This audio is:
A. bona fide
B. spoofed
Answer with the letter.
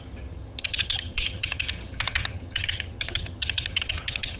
B